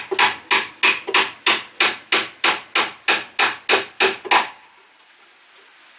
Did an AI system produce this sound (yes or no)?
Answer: no